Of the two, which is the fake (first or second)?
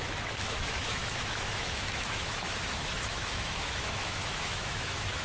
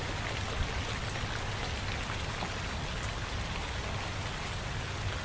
first